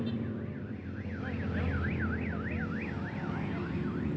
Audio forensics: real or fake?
real